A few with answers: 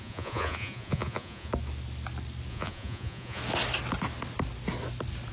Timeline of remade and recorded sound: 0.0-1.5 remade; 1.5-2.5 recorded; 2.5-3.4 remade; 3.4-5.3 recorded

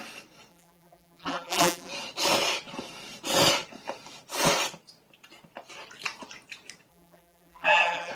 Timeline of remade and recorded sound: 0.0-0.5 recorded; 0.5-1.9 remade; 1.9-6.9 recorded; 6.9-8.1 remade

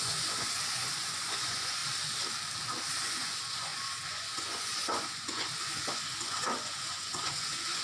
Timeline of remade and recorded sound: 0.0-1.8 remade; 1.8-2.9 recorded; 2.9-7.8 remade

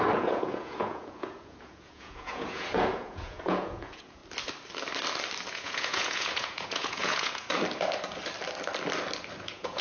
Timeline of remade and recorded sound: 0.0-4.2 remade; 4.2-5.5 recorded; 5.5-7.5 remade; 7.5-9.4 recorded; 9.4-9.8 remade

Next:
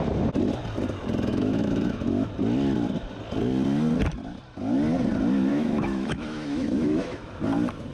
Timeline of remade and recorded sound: 0.0-1.3 recorded; 1.3-2.3 remade; 2.3-5.5 recorded; 5.5-7.3 remade; 7.3-7.9 recorded

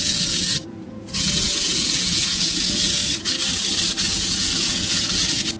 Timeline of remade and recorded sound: 0.0-3.0 remade; 3.0-4.0 recorded; 4.0-5.6 remade